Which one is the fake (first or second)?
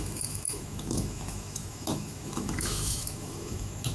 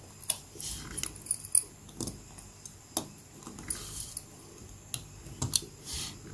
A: first